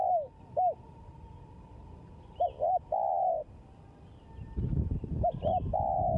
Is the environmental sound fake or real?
real